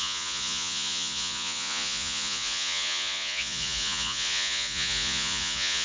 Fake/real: fake